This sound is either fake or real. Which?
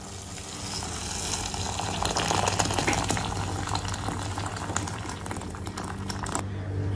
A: real